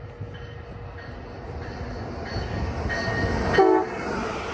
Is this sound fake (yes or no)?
no